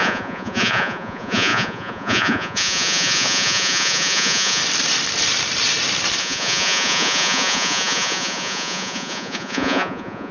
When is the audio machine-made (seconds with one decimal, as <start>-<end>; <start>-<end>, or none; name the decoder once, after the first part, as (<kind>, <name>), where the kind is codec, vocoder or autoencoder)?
0.0-4.6 (vocoder, Vocos); 6.2-10.3